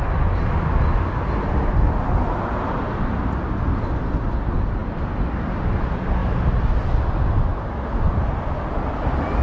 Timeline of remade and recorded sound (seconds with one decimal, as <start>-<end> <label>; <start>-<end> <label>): 0.0-9.4 recorded